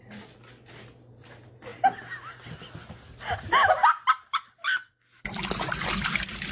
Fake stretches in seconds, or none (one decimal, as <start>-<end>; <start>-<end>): none